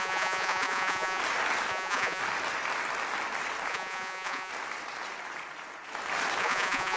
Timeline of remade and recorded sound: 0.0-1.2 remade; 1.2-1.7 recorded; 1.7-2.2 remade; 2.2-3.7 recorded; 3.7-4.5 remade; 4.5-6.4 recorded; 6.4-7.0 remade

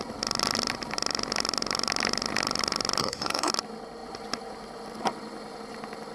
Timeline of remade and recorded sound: 0.0-3.0 recorded; 3.0-3.5 remade; 3.5-6.1 recorded

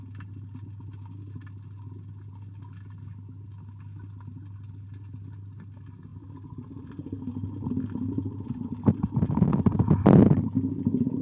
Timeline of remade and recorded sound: 0.0-11.2 recorded